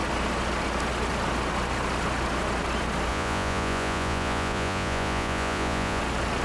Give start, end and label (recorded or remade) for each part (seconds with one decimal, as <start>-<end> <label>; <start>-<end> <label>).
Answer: 0.0-3.1 recorded; 3.1-6.0 remade; 6.0-6.4 recorded